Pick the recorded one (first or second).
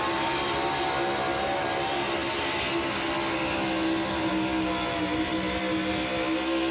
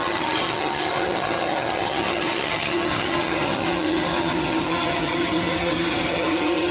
first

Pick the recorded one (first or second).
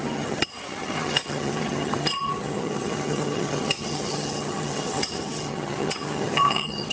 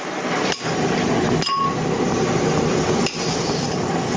second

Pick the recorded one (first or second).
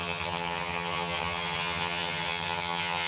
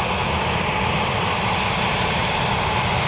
second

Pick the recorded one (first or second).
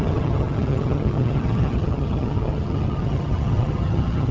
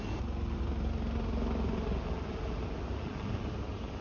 second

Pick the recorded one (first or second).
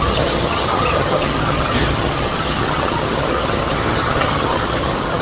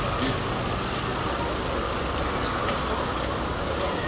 second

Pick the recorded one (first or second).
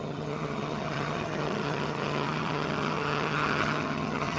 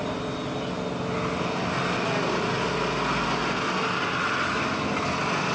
second